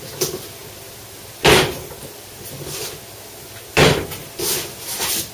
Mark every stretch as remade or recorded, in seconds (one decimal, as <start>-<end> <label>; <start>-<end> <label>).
0.0-5.3 recorded